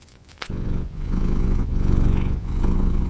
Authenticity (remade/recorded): remade